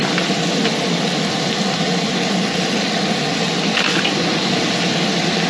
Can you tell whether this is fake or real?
real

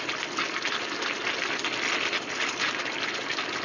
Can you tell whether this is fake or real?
real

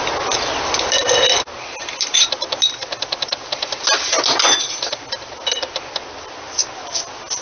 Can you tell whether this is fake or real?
real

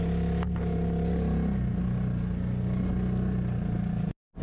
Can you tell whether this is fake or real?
real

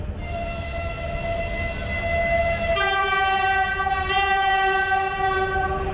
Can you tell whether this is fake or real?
real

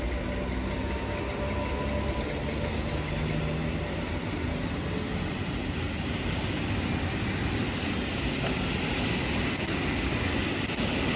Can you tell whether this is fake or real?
real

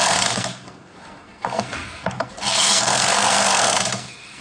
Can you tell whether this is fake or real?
fake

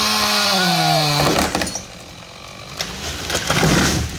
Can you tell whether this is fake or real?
real